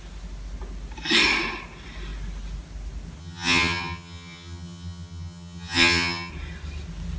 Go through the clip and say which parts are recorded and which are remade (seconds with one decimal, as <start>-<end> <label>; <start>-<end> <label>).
0.0-3.2 recorded; 3.2-6.3 remade; 6.3-7.2 recorded